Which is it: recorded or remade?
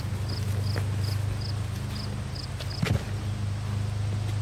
recorded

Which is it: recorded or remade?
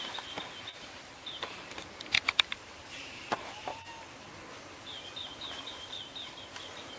recorded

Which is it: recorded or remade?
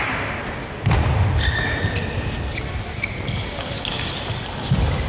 recorded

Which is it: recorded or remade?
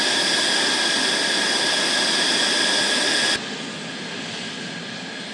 recorded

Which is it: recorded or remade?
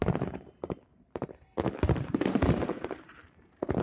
remade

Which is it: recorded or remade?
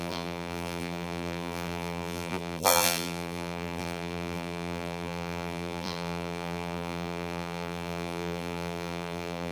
remade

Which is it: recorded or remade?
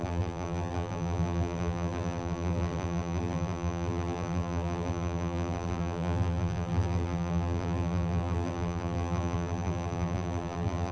remade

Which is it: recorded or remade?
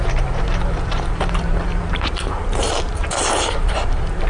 remade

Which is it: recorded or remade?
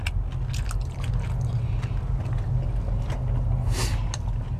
recorded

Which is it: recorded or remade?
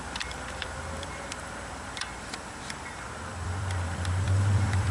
remade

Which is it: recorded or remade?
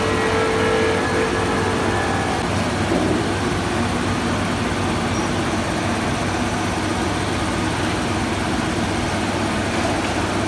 recorded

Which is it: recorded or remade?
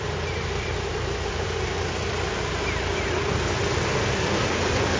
remade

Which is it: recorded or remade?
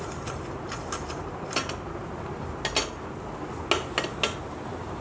recorded